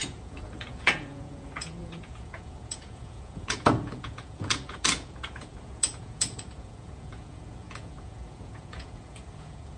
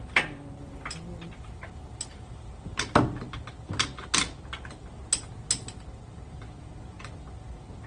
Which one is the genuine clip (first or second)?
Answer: second